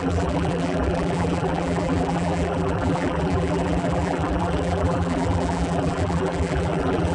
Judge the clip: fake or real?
fake